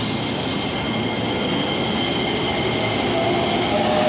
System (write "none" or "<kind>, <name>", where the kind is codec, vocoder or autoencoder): none